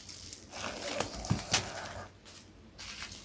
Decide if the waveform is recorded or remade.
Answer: recorded